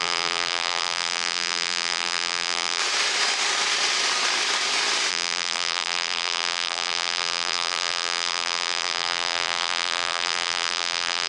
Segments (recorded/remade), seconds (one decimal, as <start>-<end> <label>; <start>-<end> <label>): 0.0-2.8 remade; 2.8-5.1 recorded; 5.1-11.3 remade